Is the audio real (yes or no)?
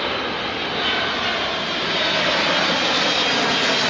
yes